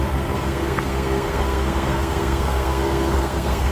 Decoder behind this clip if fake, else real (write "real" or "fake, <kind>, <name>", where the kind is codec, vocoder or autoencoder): fake, codec, SNAC